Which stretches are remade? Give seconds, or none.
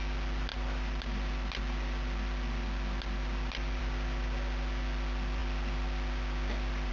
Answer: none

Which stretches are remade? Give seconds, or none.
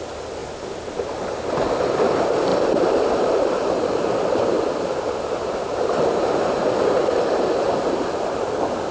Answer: 2.5-6.5 (vocoder, BigVGAN v2)